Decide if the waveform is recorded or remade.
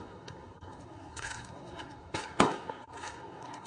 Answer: remade